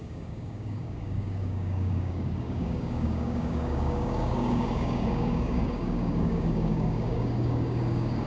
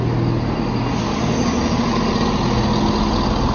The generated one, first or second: first